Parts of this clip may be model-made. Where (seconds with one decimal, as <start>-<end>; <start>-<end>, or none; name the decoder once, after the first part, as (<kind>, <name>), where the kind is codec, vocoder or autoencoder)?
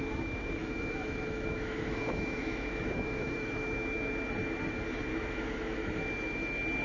0.0-4.1 (autoencoder, DAC-VAE); 5.1-6.0